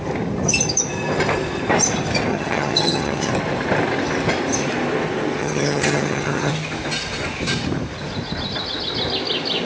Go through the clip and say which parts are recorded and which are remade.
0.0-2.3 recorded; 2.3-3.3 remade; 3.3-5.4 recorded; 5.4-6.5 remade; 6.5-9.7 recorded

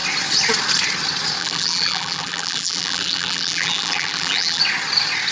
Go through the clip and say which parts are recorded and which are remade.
0.0-1.4 recorded; 1.4-4.6 remade; 4.6-5.3 recorded

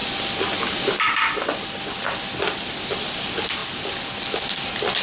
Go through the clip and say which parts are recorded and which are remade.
0.0-5.0 recorded

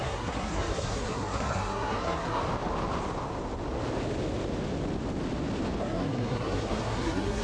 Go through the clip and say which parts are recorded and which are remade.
0.0-2.4 remade; 2.4-5.8 recorded; 5.8-7.4 remade

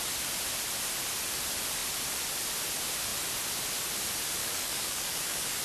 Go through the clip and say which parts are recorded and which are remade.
0.0-4.4 recorded; 4.4-5.6 remade

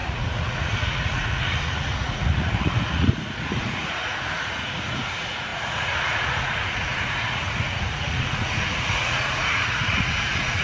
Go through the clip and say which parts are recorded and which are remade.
0.0-10.6 remade